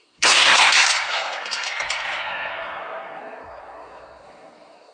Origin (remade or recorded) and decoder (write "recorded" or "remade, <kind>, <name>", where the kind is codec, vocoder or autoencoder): remade, codec, SNAC